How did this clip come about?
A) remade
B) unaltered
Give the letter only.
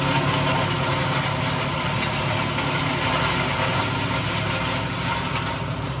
B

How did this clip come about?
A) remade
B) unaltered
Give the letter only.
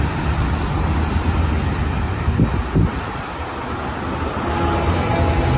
B